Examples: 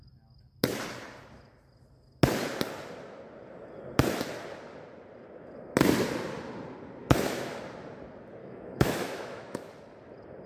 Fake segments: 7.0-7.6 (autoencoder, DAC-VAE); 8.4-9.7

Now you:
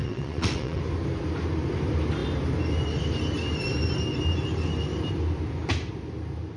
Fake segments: 0.0-0.8 (vocoder, WaveNeXt)